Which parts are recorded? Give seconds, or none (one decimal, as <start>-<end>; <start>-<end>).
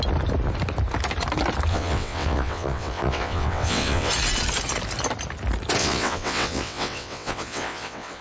0.0-1.7; 4.1-5.8